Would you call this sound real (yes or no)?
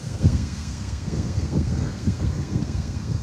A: no